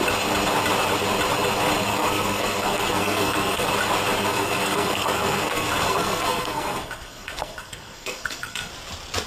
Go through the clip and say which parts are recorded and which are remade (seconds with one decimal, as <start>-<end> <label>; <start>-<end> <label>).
0.0-1.9 recorded; 1.9-3.7 remade; 3.7-4.2 recorded; 4.2-8.7 remade; 8.7-9.3 recorded